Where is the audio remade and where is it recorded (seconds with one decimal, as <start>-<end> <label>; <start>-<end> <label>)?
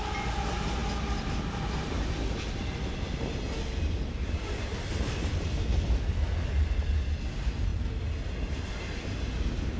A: 0.0-9.8 recorded